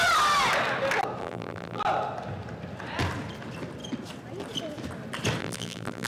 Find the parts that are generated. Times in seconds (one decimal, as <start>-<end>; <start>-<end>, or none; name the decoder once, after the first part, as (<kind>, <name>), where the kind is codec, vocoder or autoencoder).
1.2-1.8 (vocoder, BigVGAN v2); 5.4-6.1